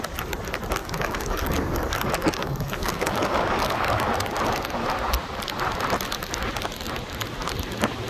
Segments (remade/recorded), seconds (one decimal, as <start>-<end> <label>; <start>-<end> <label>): 0.0-0.8 recorded; 0.8-4.1 remade; 4.1-8.1 recorded